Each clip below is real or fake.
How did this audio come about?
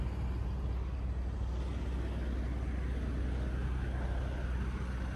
real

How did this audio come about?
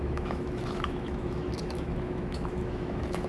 fake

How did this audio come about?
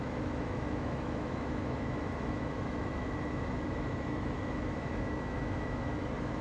fake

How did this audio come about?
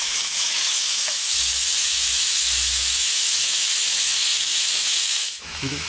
fake